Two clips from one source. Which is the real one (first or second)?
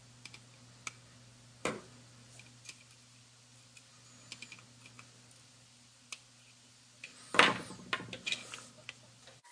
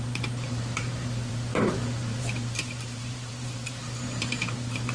first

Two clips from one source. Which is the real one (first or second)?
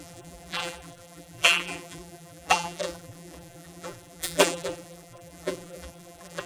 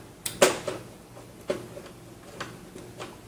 second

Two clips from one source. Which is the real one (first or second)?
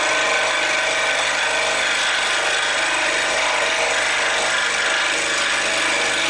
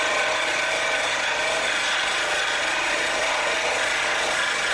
first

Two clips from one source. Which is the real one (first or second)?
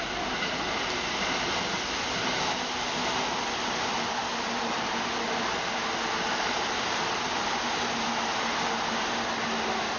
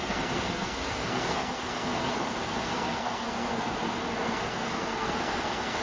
first